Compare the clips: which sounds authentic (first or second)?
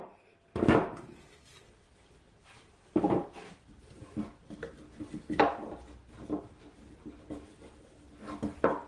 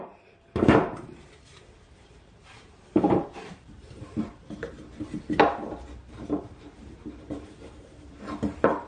first